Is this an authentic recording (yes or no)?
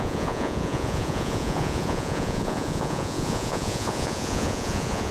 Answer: no